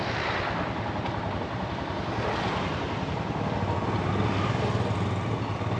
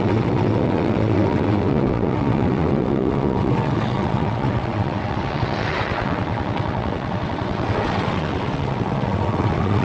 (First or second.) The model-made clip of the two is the second